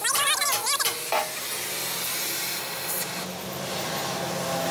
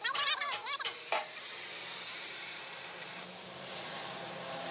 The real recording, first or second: first